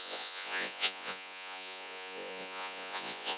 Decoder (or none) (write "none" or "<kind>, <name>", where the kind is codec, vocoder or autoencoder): vocoder, Vocos